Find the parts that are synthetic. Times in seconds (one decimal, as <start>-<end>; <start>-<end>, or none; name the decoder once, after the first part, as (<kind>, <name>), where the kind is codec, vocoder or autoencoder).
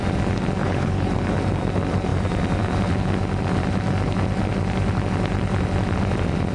0.6-1.1 (codec, HILCodec)